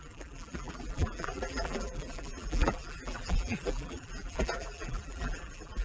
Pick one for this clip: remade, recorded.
remade